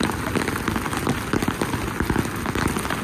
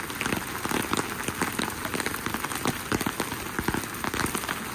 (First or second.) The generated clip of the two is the first